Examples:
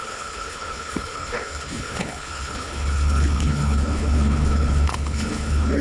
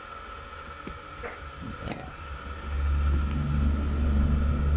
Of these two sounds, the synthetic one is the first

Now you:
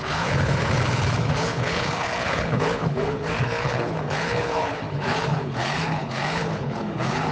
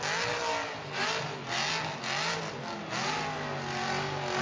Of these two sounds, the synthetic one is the first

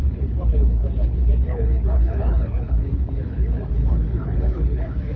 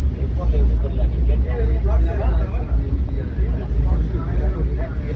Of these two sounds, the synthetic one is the first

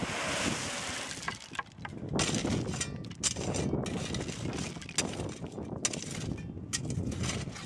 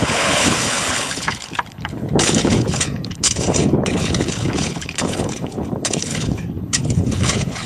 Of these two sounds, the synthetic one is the second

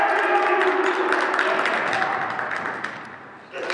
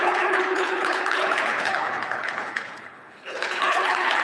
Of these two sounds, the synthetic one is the second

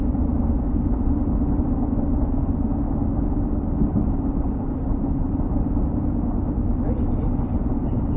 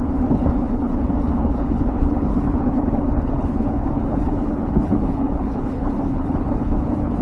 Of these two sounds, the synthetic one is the second